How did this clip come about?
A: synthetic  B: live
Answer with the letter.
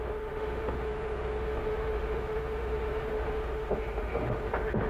A